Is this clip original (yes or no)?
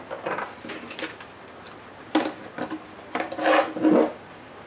yes